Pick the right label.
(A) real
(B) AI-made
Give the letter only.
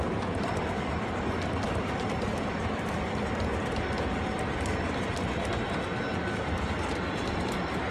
A